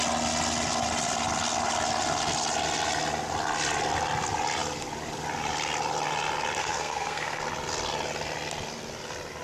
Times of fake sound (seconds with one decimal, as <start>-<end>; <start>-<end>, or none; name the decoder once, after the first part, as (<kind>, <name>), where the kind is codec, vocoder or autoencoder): 6.6-7.4 (codec, SNAC)